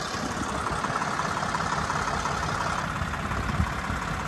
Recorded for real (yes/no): yes